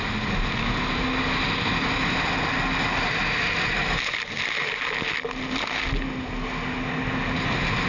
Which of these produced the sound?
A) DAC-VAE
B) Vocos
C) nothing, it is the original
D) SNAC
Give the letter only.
C